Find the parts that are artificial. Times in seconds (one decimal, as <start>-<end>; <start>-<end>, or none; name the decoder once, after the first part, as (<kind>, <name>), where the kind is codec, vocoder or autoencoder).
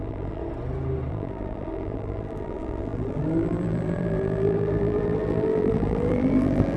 0.0-0.4 (vocoder, BigVGAN v2); 1.1-6.8